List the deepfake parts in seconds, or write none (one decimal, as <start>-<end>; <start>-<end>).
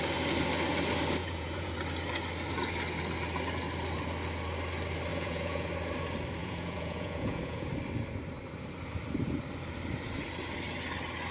1.2-1.7; 5.1-5.7; 6.4-7.7